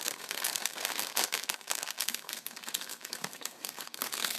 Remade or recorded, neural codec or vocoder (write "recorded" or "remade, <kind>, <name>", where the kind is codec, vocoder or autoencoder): remade, codec, SNAC